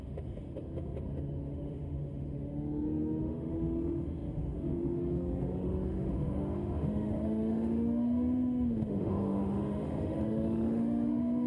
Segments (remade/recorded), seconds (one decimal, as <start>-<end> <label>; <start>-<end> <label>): 0.0-11.5 remade